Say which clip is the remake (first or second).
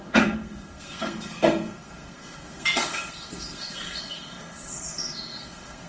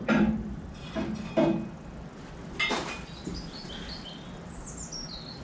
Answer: first